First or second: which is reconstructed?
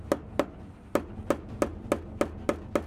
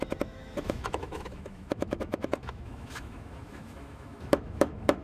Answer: second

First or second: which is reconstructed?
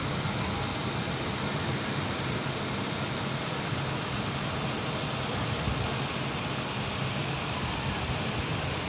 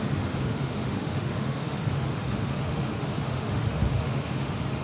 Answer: second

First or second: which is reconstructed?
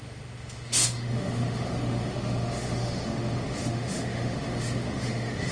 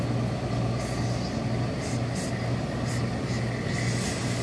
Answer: first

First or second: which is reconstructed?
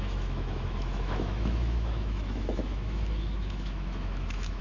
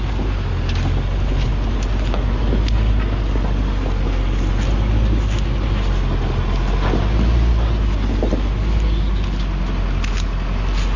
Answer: first